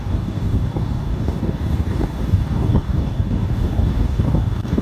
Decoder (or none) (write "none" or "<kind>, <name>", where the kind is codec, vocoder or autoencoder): codec, DAC